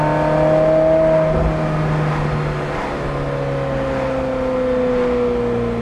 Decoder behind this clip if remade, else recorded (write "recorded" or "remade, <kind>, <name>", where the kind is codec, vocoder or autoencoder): recorded